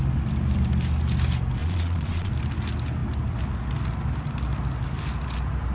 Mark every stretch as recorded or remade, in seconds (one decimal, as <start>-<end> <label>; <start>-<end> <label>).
0.0-1.6 recorded; 1.6-2.3 remade; 2.3-5.7 recorded